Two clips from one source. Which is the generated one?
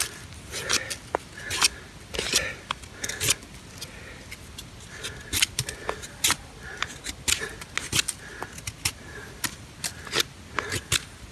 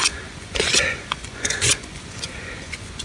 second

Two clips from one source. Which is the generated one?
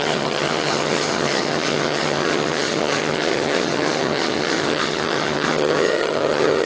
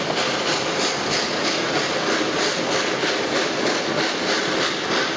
first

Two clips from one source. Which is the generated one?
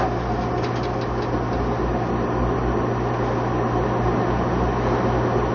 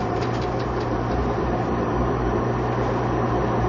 second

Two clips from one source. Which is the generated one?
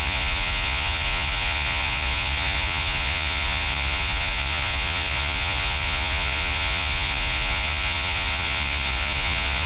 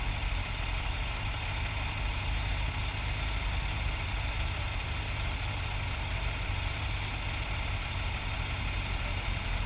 first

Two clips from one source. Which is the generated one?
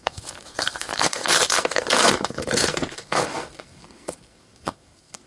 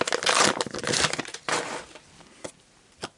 first